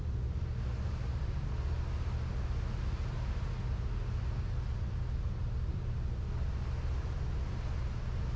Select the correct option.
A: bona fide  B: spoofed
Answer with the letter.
A